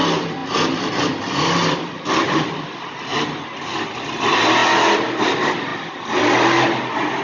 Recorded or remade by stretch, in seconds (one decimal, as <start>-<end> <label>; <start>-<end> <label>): 0.0-7.2 recorded